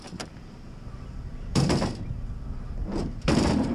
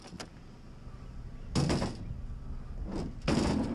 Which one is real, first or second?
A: second